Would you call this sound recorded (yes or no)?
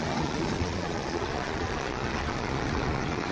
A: no